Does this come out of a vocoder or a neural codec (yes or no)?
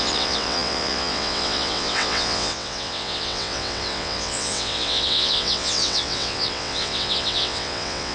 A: yes